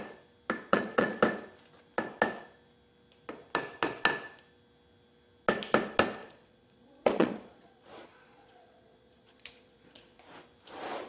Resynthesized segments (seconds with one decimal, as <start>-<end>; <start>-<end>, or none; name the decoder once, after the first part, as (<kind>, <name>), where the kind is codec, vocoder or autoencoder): 0.7-1.2 (vocoder, Vocos); 6.2-10.2